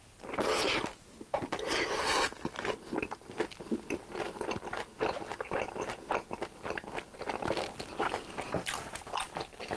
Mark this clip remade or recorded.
recorded